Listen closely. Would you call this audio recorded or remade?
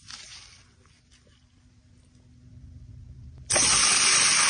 recorded